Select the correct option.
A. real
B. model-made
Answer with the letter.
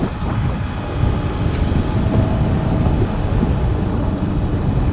A